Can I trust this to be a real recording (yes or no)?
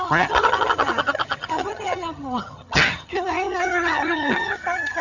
no